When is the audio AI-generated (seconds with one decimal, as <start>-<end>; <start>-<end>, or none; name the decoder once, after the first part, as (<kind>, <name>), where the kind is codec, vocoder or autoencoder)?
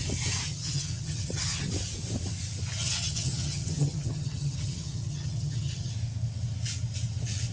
0.5-1.7 (vocoder, HiFi-GAN); 2.8-5.9